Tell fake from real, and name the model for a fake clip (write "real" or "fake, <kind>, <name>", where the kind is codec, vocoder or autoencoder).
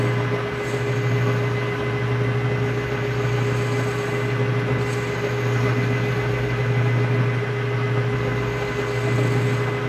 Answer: real